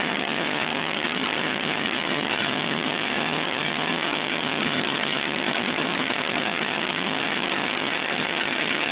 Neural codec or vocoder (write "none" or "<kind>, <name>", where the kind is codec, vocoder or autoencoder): vocoder, HiFi-GAN